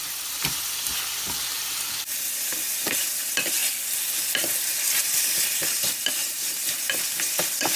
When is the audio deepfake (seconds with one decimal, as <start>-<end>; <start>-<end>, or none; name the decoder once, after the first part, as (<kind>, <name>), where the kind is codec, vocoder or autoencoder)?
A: 0.0-1.5 (vocoder, BigVGAN v2); 2.8-3.6; 5.0-7.8